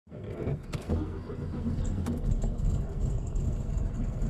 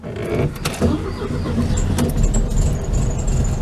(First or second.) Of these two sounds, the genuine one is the second